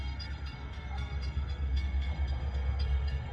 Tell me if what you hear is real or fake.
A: fake